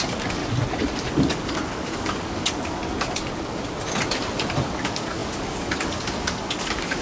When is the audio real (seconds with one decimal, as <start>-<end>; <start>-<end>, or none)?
0.4-1.1; 2.8-4.7